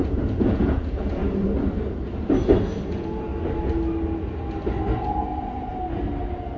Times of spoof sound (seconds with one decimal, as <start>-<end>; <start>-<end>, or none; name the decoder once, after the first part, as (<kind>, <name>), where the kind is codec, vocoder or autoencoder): 0.0-1.2 (vocoder, Vocos); 2.9-3.3; 5.1-5.7